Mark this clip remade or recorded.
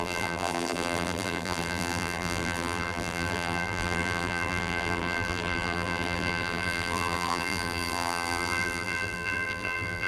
remade